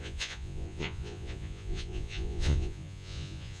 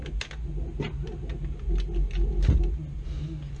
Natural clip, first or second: second